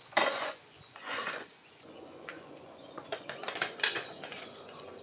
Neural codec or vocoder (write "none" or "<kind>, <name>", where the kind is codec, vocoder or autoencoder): vocoder, Vocos